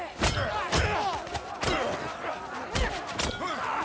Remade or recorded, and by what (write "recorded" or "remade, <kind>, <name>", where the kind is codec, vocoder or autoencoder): recorded